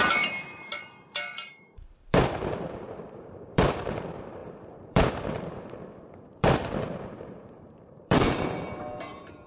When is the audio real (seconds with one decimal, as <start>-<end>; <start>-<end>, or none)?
none